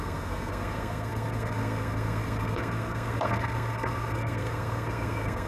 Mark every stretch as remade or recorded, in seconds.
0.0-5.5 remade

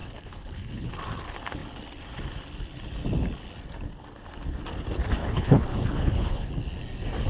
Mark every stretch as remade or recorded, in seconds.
0.0-0.9 remade; 0.9-5.2 recorded; 5.2-6.5 remade; 6.5-7.3 recorded